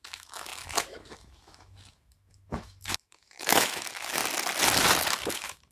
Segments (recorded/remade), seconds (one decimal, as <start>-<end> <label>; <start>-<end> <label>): 0.0-4.2 remade; 4.2-5.2 recorded; 5.2-5.7 remade